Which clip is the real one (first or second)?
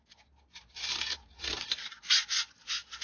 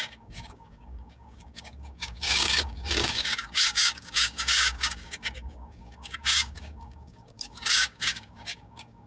first